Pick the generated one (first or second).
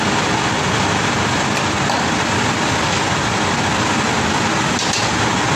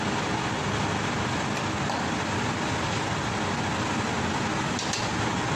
first